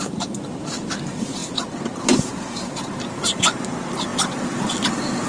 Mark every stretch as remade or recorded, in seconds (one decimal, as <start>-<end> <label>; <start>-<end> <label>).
0.0-5.3 recorded